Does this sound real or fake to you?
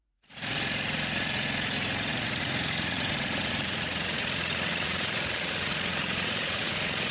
fake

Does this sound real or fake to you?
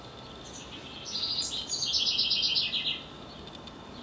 real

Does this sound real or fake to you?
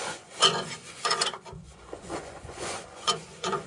fake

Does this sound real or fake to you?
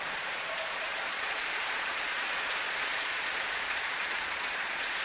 fake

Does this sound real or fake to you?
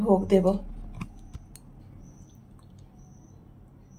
real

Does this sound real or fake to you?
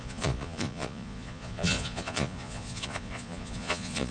fake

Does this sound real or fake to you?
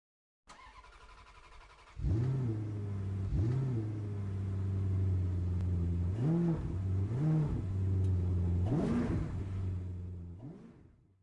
real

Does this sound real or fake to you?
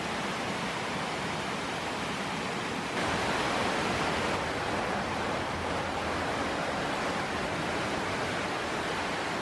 real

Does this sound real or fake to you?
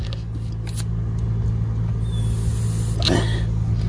real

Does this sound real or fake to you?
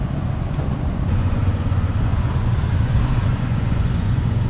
fake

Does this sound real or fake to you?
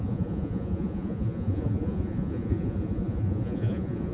fake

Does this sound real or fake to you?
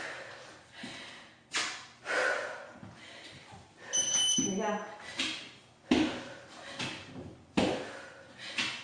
real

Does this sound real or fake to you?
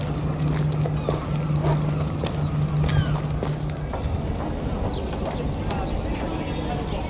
real